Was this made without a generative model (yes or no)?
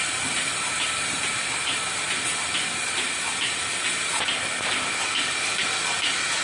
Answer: yes